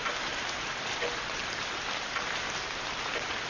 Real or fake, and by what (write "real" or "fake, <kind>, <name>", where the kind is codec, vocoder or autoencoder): real